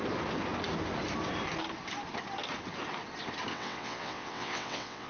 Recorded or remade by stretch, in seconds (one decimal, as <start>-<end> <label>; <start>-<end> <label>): 0.0-3.5 recorded; 3.5-5.1 remade